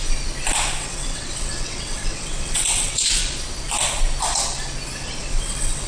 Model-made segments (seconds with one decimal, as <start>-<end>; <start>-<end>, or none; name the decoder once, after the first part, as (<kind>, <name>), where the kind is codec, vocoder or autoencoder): 0.8-3.2 (vocoder, WaveNeXt); 5.2-5.9